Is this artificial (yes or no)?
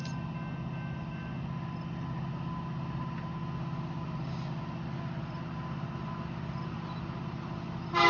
no